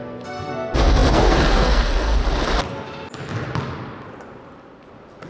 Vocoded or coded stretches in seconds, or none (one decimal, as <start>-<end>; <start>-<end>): 0.0-2.2

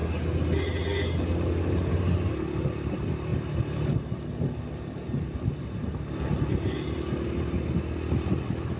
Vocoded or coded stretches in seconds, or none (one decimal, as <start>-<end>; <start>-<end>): none

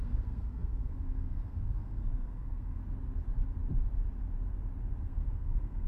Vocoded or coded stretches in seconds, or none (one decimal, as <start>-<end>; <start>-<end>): 0.0-2.8; 5.0-5.9

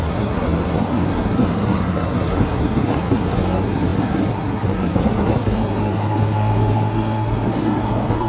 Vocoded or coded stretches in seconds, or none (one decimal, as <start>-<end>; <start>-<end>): 0.0-8.3

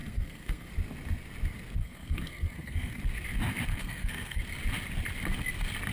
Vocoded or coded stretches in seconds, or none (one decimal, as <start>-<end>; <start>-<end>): 0.0-0.7; 1.8-3.0; 3.7-4.4

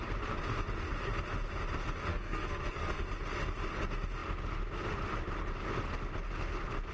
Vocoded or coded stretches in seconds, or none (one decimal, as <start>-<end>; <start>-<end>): 2.1-3.1

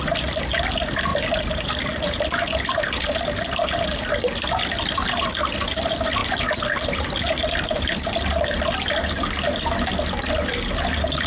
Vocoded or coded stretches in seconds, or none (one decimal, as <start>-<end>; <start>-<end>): none

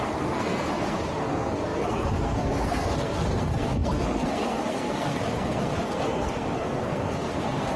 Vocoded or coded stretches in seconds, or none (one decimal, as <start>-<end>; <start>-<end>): 0.0-7.8